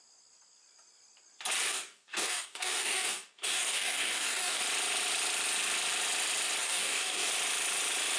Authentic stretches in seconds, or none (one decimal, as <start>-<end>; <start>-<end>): 0.0-1.7; 4.6-6.6; 7.3-8.2